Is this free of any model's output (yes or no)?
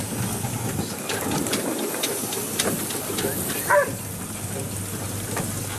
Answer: yes